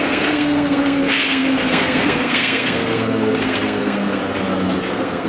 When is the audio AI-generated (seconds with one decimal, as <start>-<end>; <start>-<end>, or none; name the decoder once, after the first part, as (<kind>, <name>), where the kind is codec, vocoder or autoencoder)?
0.0-4.2 (codec, SNAC); 4.8-5.3